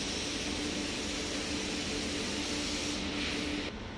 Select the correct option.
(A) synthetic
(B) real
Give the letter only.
B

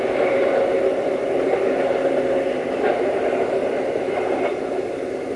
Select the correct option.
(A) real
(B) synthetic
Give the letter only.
A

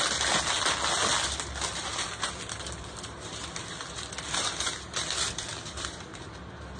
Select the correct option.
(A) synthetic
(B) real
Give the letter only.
B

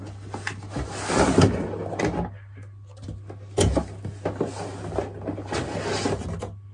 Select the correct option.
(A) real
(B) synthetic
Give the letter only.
A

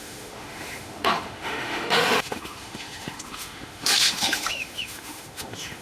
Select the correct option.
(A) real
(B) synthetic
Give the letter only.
B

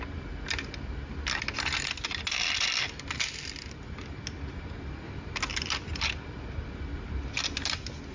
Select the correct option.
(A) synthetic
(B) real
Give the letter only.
B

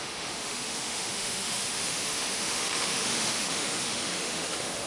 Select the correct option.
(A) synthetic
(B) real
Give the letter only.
A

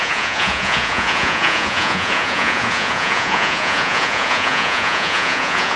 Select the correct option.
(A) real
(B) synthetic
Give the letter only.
B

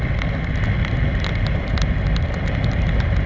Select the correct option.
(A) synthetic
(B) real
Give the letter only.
B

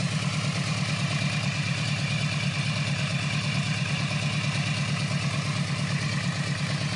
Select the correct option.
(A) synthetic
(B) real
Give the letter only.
B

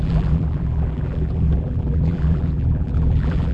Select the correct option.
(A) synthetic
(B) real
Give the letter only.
A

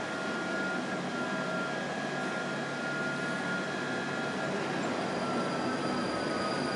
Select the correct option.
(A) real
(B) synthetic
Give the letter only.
A